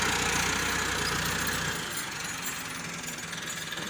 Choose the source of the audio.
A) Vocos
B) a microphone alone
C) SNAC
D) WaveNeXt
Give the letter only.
B